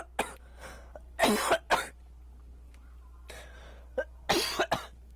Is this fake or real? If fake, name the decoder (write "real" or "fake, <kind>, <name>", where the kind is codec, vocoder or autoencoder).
real